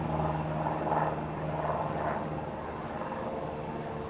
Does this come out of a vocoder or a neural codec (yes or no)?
no